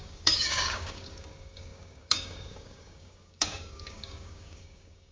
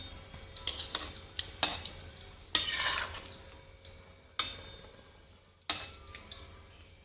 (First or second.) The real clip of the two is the second